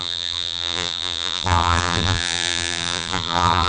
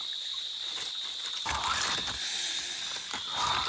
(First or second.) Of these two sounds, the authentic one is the second